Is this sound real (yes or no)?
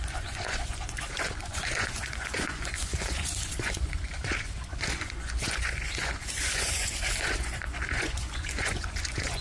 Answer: no